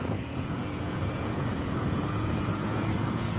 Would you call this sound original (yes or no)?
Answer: no